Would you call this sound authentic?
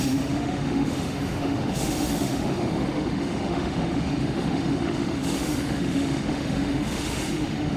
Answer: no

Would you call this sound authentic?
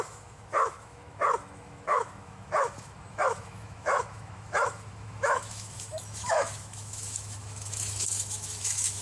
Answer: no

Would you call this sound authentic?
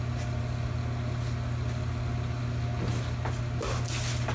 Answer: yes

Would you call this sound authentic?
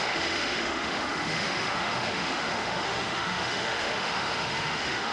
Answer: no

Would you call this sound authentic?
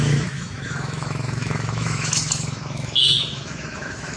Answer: no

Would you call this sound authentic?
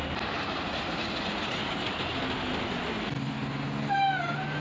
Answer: yes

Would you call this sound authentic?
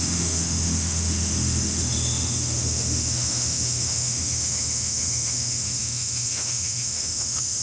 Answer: no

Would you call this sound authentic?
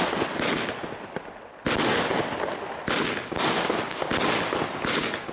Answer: yes